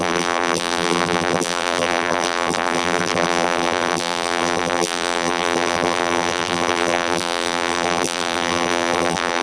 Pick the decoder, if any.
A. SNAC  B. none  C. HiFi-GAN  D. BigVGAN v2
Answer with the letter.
D